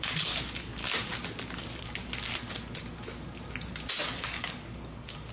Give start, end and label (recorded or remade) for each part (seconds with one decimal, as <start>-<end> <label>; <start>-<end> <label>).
0.0-0.8 remade; 0.8-4.0 recorded; 4.0-5.3 remade